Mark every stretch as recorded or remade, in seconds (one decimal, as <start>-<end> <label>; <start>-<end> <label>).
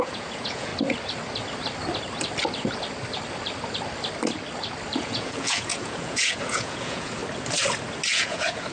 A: 0.0-0.7 remade; 0.7-5.0 recorded; 5.0-7.2 remade; 7.2-8.1 recorded; 8.1-8.7 remade